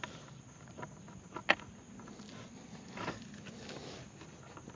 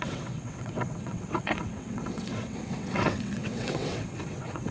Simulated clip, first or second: second